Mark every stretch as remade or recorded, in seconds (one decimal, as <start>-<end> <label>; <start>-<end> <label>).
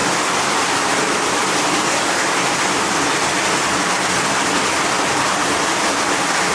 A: 0.0-6.5 recorded